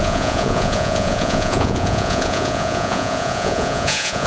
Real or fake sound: fake